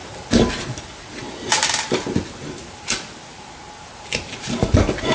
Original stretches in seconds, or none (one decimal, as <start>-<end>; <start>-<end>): 0.0-5.1